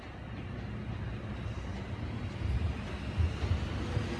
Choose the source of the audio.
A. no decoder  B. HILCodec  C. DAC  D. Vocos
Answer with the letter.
A